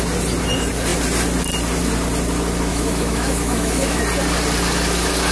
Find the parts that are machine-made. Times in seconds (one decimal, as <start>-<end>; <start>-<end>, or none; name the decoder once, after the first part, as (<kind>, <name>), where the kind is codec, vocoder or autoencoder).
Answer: 2.7-4.0 (autoencoder, DAC-VAE)